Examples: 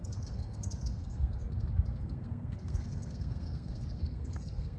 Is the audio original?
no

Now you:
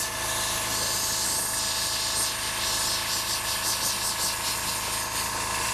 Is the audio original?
yes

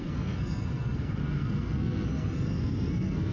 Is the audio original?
no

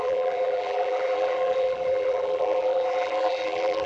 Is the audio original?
no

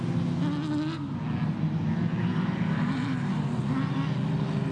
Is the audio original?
yes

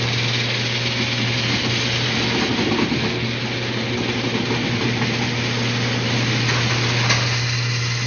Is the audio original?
yes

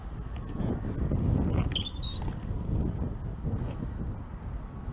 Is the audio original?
yes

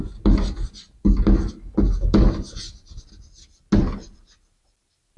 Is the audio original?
yes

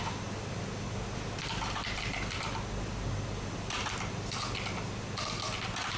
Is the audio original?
yes